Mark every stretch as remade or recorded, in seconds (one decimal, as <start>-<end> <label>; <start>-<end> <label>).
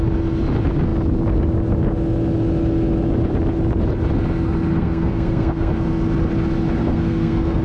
0.0-4.7 recorded; 4.7-5.7 remade; 5.7-6.8 recorded; 6.8-7.6 remade